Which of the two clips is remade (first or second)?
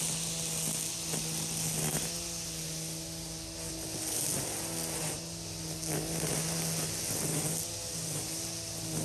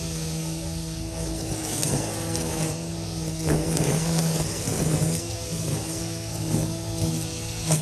second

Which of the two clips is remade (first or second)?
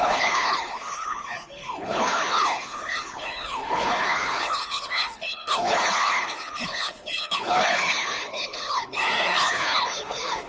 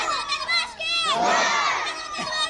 first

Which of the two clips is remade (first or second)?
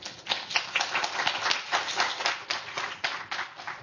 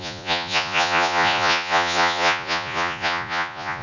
second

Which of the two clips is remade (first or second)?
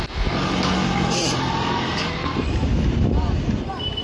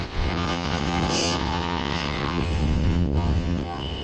second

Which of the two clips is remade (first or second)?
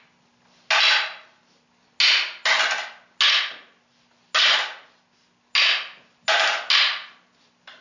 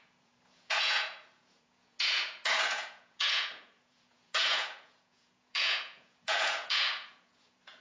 second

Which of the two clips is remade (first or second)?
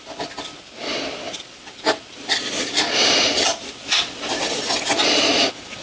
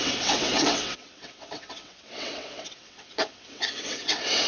second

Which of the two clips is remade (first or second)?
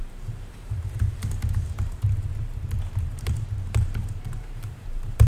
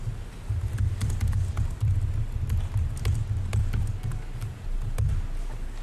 first